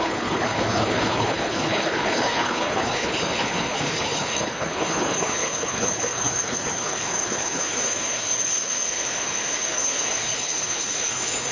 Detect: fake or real fake